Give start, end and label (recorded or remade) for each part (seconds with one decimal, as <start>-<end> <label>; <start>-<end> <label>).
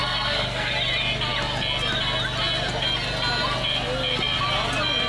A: 0.0-0.7 remade; 0.7-5.1 recorded